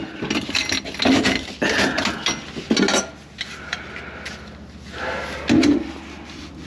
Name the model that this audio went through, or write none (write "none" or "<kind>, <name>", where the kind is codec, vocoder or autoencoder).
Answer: none